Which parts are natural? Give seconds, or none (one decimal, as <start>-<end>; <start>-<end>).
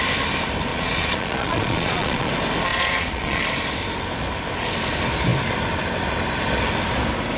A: 0.0-0.7; 2.3-2.7; 3.4-7.4